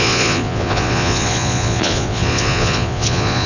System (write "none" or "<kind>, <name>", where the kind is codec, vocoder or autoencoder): vocoder, Vocos